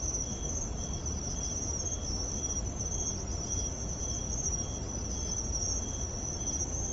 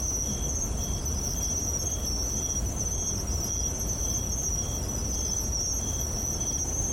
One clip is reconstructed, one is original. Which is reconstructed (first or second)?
first